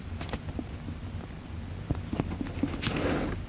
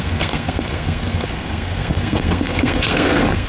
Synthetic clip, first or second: second